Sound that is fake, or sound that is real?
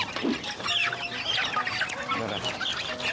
real